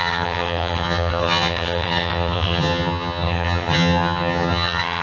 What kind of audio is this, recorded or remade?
remade